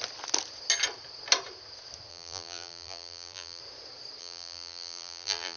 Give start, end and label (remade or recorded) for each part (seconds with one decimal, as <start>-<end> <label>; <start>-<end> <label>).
0.0-2.1 recorded; 2.1-3.6 remade; 3.6-4.2 recorded; 4.2-5.6 remade